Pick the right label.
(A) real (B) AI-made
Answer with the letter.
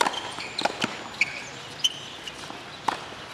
B